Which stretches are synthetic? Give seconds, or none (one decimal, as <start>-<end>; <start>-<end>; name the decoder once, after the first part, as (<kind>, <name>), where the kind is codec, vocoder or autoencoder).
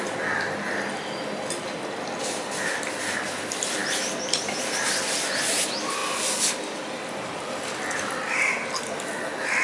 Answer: none